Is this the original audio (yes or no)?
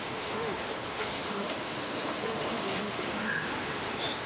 no